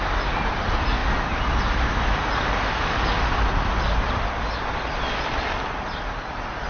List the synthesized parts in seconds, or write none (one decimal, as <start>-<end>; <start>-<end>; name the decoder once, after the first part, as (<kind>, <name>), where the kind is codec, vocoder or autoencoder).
none